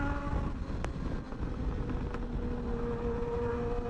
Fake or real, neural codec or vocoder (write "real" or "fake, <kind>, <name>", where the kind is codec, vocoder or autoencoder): real